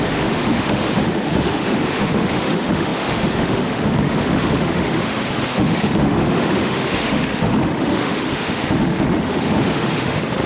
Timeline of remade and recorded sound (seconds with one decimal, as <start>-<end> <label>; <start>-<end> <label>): 0.0-10.5 remade